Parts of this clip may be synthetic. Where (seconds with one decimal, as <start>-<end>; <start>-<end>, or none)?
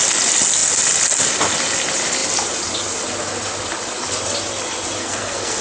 5.0-5.6